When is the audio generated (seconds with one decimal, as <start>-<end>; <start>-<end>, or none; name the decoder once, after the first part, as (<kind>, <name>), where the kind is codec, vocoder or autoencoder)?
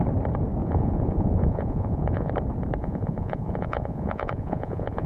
0.6-2.3 (vocoder, Vocos); 2.8-5.1